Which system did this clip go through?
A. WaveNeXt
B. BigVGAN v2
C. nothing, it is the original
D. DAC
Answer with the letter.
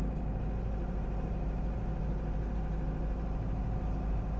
C